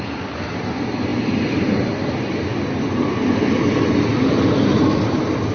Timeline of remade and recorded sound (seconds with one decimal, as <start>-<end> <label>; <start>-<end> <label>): 0.0-5.5 recorded